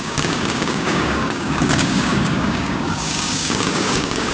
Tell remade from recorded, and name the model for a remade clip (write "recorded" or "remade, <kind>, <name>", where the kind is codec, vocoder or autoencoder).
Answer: remade, codec, DAC